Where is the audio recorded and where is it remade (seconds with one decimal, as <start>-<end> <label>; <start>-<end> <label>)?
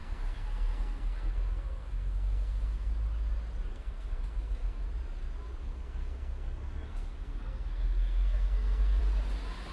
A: 0.0-2.9 remade; 2.9-3.7 recorded; 3.7-4.9 remade; 4.9-5.6 recorded; 5.6-9.0 remade; 9.0-9.7 recorded